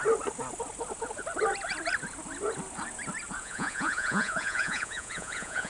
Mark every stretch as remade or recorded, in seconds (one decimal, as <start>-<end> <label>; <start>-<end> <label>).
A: 0.0-3.4 recorded; 3.4-5.7 remade